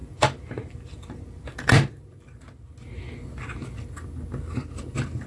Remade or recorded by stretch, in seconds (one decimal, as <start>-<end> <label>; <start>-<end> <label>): 0.0-1.9 remade; 1.9-5.3 recorded